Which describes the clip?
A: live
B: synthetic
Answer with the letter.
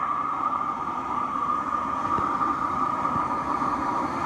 B